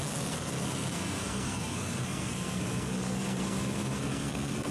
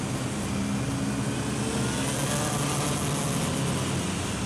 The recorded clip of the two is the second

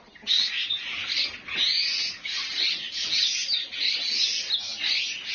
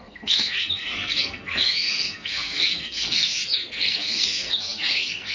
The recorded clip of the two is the first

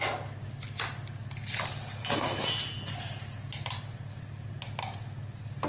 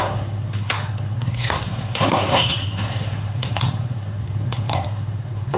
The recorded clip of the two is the first